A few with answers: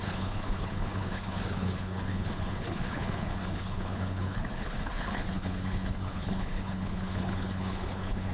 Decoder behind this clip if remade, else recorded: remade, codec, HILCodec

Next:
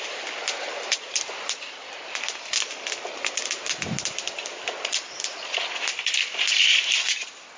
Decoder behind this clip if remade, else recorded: recorded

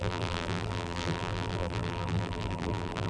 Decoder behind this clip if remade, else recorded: remade, vocoder, BigVGAN v2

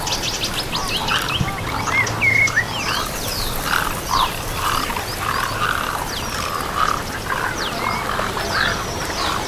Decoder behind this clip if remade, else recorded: recorded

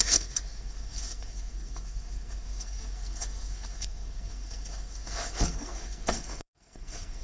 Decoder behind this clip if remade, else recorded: remade, codec, SNAC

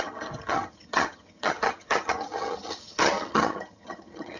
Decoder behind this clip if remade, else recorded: remade, vocoder, HiFi-GAN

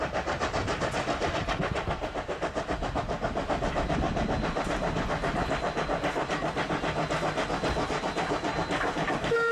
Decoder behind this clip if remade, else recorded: recorded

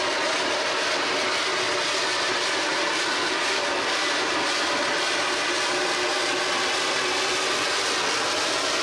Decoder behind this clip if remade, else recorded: recorded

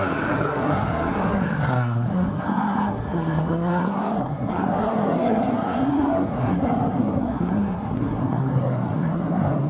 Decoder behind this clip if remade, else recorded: remade, codec, SNAC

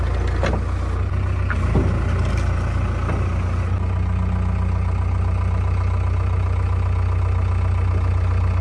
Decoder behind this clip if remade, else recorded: recorded